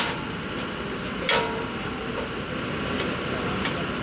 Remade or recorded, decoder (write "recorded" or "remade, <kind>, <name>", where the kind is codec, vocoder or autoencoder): recorded